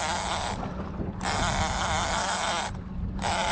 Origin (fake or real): real